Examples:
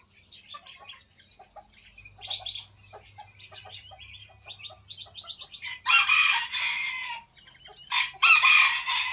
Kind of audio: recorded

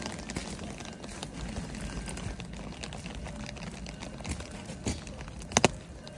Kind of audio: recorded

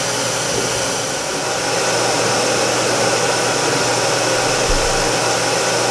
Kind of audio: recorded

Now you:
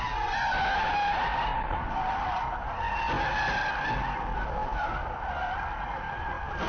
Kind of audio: recorded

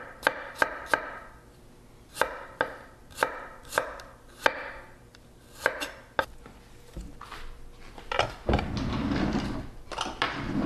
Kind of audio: recorded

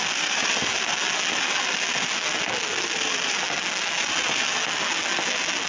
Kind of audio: recorded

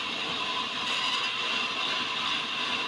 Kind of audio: recorded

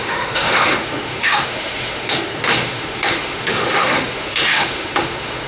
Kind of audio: remade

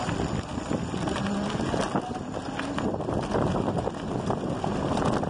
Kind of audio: recorded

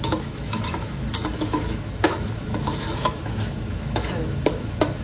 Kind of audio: remade